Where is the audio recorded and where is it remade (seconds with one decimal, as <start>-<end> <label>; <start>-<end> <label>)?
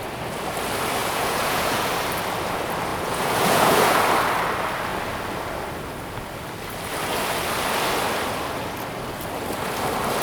0.0-1.0 recorded; 1.0-1.9 remade; 1.9-2.9 recorded; 2.9-4.0 remade; 4.0-10.2 recorded